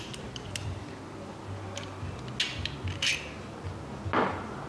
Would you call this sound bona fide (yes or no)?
yes